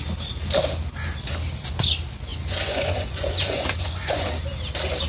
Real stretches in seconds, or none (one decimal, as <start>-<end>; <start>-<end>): 0.0-2.3; 4.3-5.1